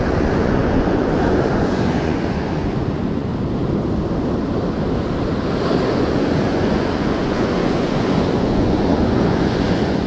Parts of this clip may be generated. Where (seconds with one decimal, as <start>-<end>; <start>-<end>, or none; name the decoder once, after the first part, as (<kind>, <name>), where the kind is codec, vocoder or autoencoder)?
0.0-3.3 (vocoder, Vocos); 5.9-10.1